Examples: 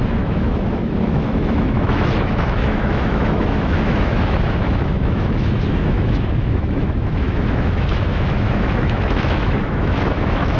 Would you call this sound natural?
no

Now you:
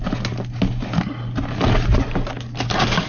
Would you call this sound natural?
yes